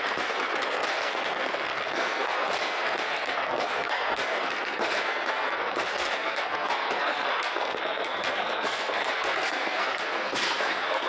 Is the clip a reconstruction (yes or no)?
yes